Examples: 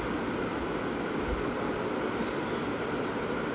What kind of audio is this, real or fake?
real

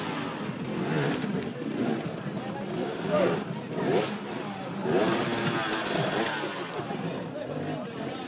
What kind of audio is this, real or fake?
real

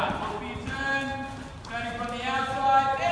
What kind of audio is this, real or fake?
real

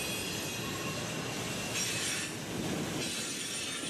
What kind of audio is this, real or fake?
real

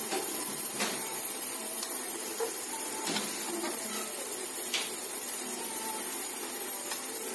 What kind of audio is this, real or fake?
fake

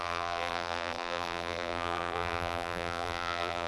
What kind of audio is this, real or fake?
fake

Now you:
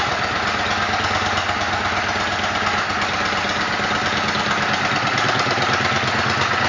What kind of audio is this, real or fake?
real